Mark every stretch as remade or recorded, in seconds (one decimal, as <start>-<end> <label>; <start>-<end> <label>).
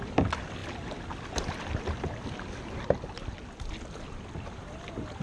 0.0-5.2 recorded